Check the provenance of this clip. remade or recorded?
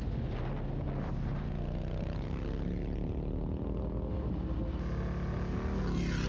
recorded